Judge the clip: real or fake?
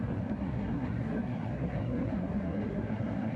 fake